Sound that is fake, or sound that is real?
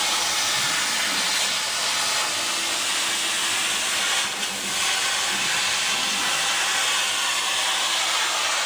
real